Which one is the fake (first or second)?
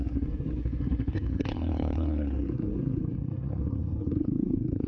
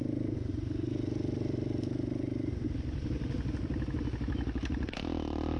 first